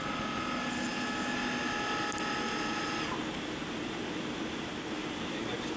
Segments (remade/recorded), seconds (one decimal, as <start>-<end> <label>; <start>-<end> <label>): 0.0-5.8 recorded